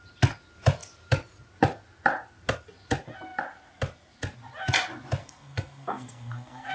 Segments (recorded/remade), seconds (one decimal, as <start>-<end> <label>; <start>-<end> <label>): 0.0-5.2 recorded; 5.2-6.7 remade